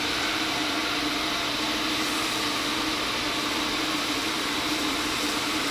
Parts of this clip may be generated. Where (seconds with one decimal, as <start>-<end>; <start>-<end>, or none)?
0.0-0.8; 3.4-5.7